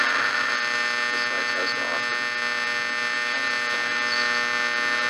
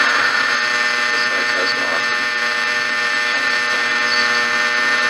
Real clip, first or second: first